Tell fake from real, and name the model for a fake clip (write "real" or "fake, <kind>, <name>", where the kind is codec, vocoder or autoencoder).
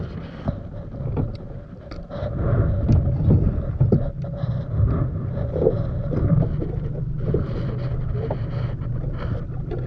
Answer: real